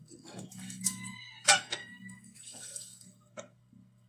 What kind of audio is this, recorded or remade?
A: remade